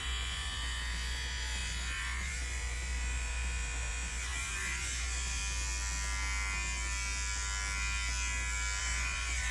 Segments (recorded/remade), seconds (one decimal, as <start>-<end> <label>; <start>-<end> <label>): 0.0-5.4 remade; 5.4-8.8 recorded; 8.8-9.5 remade